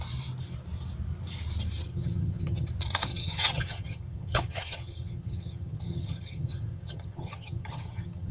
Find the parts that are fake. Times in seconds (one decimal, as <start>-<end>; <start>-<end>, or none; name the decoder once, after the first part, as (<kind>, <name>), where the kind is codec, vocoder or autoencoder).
1.9-2.7 (vocoder, HiFi-GAN); 3.1-8.3